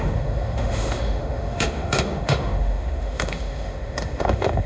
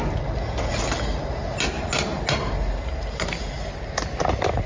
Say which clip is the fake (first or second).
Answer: first